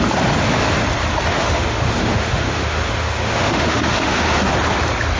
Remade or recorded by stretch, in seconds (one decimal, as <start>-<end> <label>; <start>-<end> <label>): 0.0-1.3 recorded; 1.3-4.4 remade; 4.4-5.2 recorded